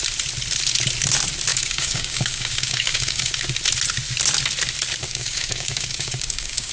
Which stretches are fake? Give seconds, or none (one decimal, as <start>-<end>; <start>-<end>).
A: 1.5-3.3; 5.0-6.7